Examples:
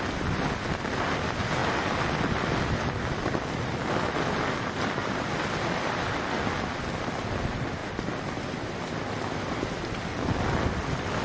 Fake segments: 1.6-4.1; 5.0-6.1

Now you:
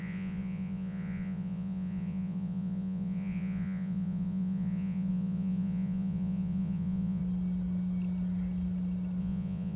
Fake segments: 0.0-7.2; 9.2-9.8

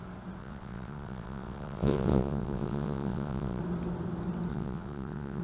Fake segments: 0.4-3.6; 4.5-5.4

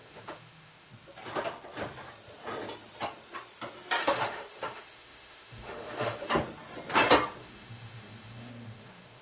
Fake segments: 0.0-0.9; 4.0-6.3; 7.4-9.2

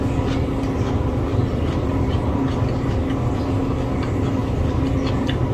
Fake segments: 1.3-2.5

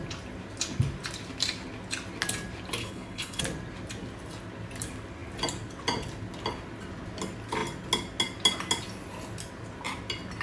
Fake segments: 2.8-3.4